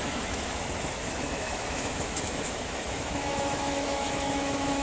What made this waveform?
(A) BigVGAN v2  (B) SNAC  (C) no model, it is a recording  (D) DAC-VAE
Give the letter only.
D